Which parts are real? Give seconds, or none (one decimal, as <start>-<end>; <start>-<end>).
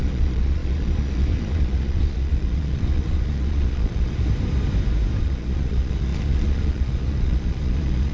4.2-5.2